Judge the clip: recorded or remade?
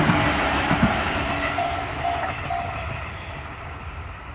recorded